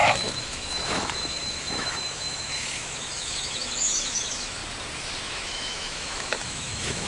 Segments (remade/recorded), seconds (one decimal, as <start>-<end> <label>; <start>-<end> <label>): 0.0-4.6 remade; 4.6-5.2 recorded; 5.2-7.1 remade